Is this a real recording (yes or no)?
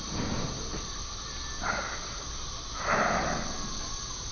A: yes